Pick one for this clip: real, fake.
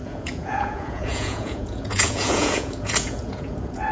fake